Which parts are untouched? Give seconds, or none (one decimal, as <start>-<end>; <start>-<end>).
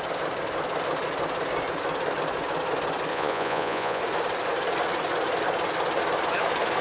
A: 0.0-3.1; 4.0-6.8